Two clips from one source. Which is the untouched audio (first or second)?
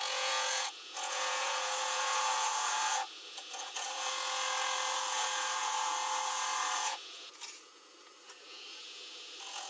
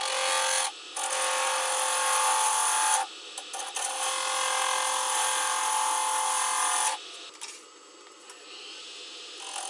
second